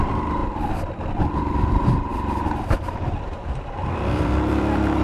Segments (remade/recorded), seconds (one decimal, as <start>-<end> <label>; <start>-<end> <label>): 0.0-0.4 remade; 0.4-1.1 recorded; 1.1-5.0 remade